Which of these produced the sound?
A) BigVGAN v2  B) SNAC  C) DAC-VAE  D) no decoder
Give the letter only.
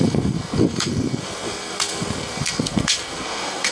B